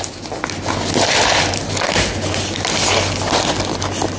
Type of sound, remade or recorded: recorded